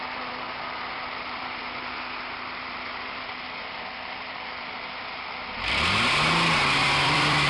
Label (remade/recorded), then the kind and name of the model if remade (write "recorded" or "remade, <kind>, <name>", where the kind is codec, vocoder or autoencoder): remade, vocoder, BigVGAN v2